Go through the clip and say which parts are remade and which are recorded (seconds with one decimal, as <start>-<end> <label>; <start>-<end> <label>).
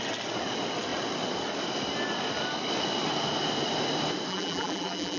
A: 0.0-4.3 recorded; 4.3-5.2 remade